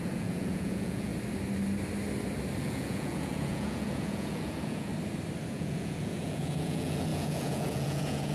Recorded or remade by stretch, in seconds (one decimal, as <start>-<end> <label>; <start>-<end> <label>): 0.0-1.1 remade; 1.1-2.6 recorded; 2.6-4.9 remade; 4.9-5.5 recorded; 5.5-8.3 remade